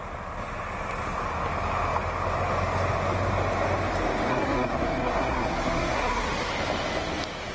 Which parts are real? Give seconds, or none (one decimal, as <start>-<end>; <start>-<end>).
0.0-4.3; 6.5-7.5